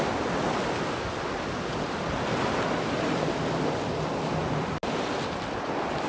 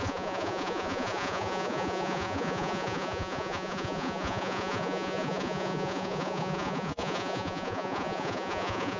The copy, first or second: second